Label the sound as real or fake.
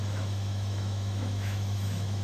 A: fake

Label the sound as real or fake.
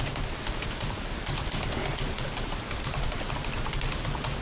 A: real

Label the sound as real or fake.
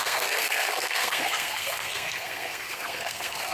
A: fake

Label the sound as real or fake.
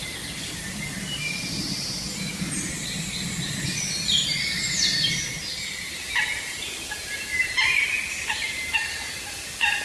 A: fake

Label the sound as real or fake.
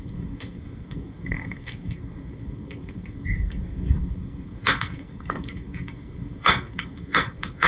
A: fake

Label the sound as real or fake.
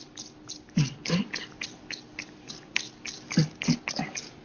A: real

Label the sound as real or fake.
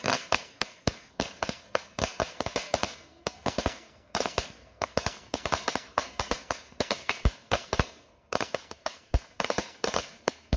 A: fake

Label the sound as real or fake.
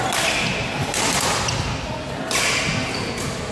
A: real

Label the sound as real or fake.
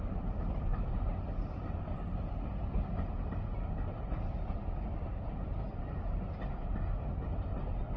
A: real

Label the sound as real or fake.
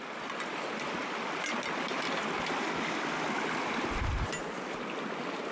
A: real